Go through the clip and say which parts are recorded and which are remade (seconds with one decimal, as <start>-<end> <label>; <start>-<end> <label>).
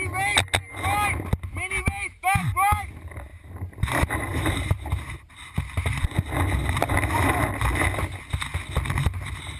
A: 0.0-3.3 recorded; 3.3-5.1 remade; 5.1-9.6 recorded